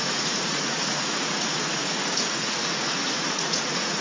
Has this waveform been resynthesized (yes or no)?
yes